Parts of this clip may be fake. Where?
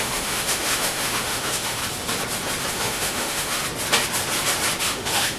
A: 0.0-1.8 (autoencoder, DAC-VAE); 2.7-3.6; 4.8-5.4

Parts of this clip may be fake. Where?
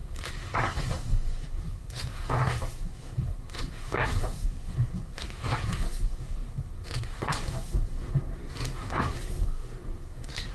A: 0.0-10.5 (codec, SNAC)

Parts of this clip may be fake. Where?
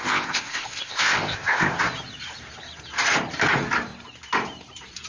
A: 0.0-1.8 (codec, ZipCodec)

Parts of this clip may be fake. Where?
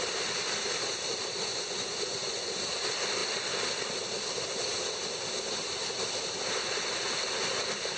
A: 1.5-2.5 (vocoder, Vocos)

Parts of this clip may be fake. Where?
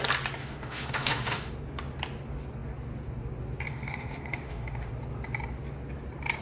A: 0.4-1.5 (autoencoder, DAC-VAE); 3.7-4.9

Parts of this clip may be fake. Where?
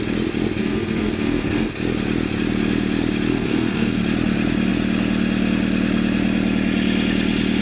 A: 0.6-1.7 (codec, SNAC); 3.3-4.0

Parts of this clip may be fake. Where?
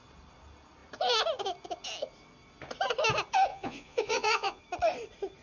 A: 3.5-4.6 (vocoder, Vocos)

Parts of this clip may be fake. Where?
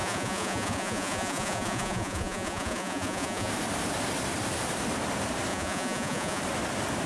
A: 0.0-3.5 (vocoder, Vocos); 5.5-6.4